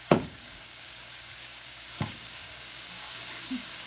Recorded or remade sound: remade